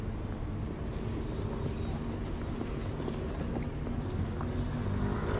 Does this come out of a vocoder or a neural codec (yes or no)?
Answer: no